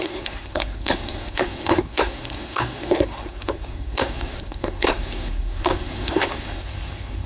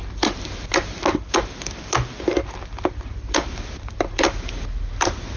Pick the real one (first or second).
second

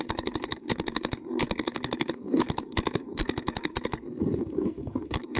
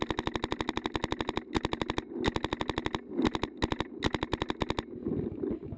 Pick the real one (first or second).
second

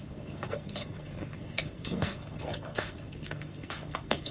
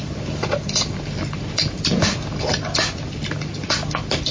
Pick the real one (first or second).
second